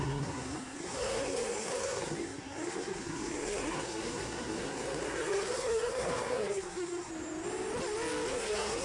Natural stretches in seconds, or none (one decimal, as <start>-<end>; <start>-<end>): 7.1-8.3